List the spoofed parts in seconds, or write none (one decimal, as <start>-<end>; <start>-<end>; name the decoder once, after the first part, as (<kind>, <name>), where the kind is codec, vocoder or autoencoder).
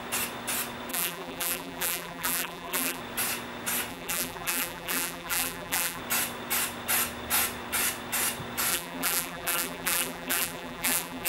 0.9-3.0 (vocoder, BigVGAN v2); 3.9-6.0; 8.7-11.3